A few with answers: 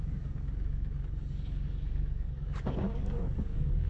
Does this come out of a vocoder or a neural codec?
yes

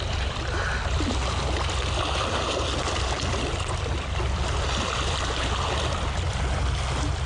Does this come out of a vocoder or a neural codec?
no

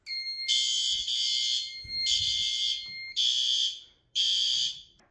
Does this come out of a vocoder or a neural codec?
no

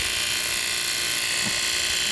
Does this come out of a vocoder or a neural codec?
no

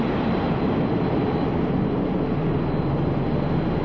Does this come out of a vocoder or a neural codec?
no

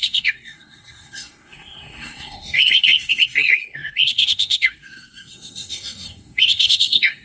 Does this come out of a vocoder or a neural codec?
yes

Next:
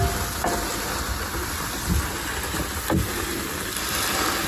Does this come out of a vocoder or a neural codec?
no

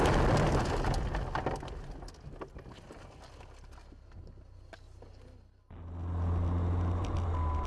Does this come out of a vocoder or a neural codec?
no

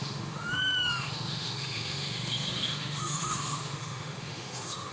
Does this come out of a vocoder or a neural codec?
yes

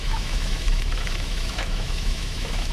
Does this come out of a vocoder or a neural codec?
yes